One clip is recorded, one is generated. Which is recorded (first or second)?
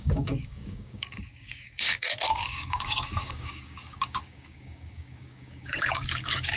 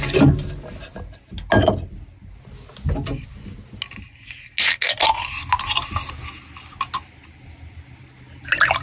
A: second